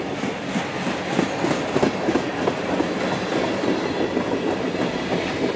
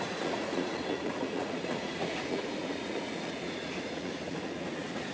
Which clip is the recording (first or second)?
first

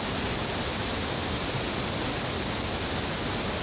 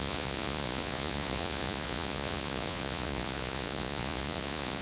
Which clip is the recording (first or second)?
first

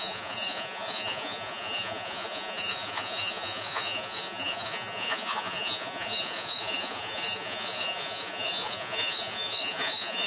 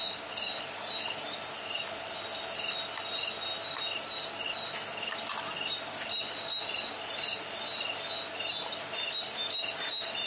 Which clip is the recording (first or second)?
second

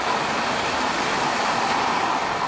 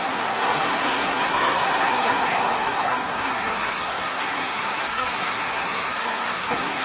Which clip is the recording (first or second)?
first